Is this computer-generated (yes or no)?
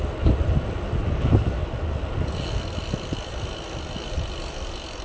no